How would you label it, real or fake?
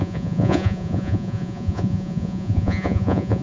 fake